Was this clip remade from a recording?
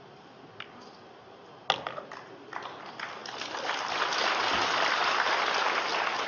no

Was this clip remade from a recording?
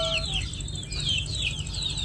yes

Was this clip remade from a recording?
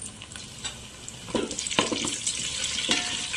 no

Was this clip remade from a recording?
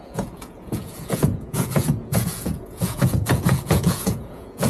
yes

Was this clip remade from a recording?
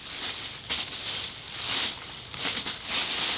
no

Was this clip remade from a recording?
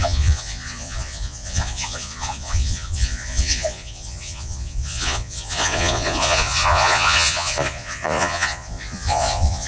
yes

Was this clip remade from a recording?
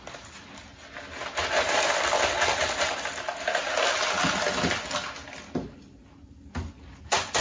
no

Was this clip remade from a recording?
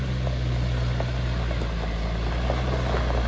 no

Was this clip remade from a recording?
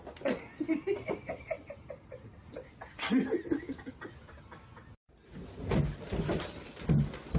no